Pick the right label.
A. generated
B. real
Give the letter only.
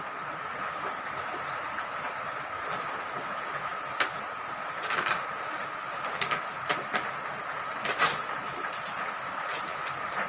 B